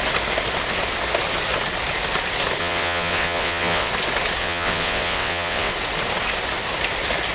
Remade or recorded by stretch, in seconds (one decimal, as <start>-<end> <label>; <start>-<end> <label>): 0.0-2.6 recorded; 2.6-3.9 remade; 3.9-4.4 recorded; 4.4-5.7 remade; 5.7-7.3 recorded